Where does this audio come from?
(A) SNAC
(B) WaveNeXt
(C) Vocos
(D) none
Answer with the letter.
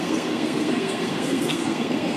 A